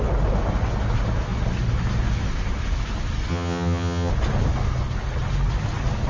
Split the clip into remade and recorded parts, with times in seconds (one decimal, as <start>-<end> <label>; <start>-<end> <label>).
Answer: 0.0-3.3 recorded; 3.3-4.1 remade; 4.1-6.1 recorded